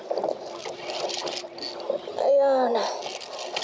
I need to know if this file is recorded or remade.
recorded